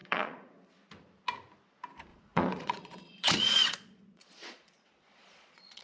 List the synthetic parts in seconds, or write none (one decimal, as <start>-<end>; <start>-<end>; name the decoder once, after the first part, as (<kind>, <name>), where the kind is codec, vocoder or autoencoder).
0.0-0.7 (vocoder, Vocos); 2.1-5.8